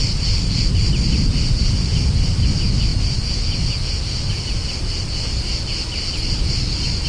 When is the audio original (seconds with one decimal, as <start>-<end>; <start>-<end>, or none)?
0.0-7.1